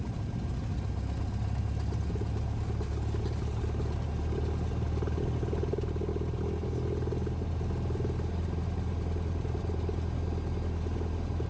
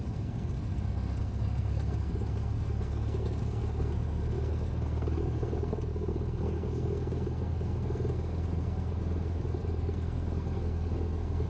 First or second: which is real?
first